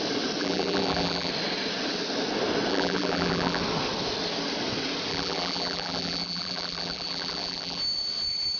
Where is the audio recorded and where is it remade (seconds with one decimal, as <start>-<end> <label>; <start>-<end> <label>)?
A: 0.0-0.4 recorded; 0.4-1.3 remade; 1.3-2.7 recorded; 2.7-3.6 remade; 3.6-5.1 recorded; 5.1-7.8 remade; 7.8-8.6 recorded